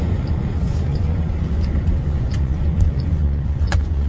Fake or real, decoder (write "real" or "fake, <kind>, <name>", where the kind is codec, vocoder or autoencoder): fake, vocoder, Vocos